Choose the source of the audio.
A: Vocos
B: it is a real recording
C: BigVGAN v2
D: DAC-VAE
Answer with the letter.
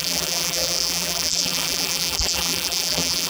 C